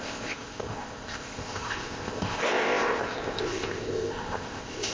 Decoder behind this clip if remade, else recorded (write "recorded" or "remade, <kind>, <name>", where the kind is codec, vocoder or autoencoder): remade, codec, ZipCodec